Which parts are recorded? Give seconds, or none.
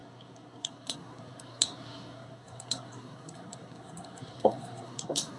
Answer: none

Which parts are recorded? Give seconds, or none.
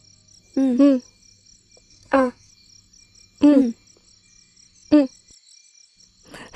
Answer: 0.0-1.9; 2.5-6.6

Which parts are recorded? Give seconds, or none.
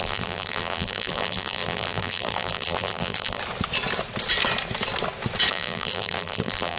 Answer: 3.4-5.5